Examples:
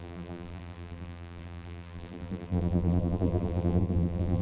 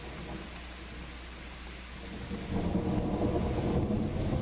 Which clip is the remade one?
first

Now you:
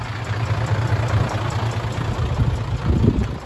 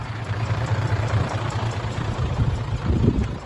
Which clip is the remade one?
second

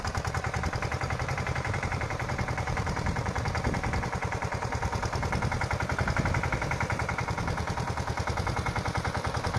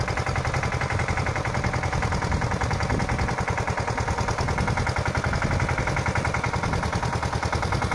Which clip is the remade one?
first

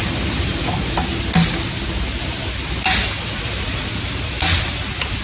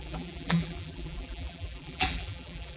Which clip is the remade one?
second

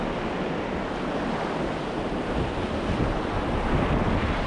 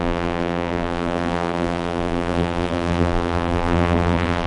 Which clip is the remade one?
second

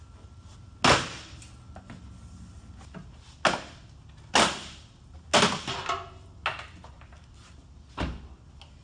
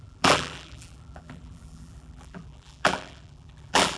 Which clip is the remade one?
second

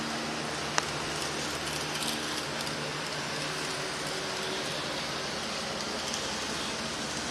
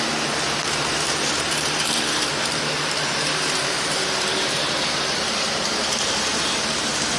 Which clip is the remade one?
second